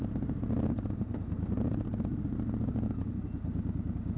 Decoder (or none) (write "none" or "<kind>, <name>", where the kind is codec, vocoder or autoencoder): none